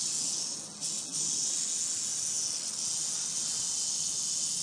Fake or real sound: real